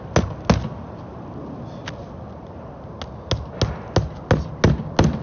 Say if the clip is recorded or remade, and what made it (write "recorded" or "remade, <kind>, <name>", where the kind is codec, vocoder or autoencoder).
recorded